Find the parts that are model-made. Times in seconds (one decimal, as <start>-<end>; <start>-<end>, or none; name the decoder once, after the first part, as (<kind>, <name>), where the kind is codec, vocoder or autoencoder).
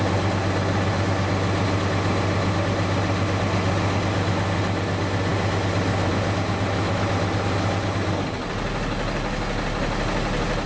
none